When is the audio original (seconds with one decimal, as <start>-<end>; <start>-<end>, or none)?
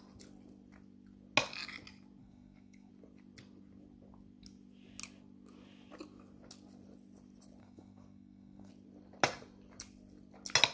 0.0-2.2; 2.9-7.6; 8.7-10.7